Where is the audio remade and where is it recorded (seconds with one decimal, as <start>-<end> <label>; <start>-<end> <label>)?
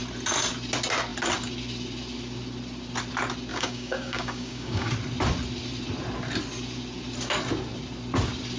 0.0-3.5 recorded; 3.5-4.9 remade; 4.9-8.6 recorded